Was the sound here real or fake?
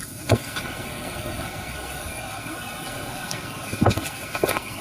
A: fake